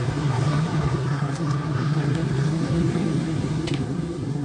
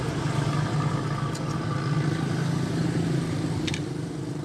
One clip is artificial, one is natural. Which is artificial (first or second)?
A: first